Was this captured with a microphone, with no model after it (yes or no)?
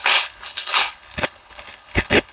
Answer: no